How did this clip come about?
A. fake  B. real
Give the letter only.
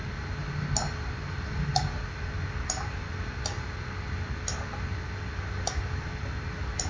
B